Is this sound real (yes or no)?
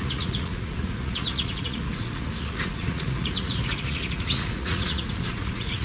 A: no